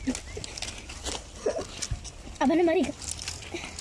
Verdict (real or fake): real